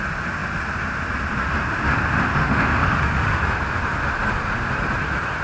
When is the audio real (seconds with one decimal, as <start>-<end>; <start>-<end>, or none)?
0.0-2.3; 3.4-5.4

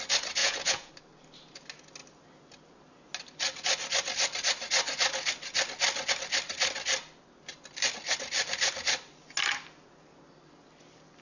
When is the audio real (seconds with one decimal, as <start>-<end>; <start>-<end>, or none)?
0.0-0.4; 0.9-11.2